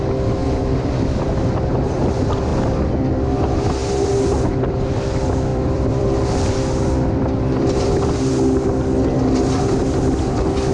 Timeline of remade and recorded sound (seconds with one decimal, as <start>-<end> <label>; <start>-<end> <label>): 0.0-5.5 recorded; 5.5-8.3 remade; 8.3-10.7 recorded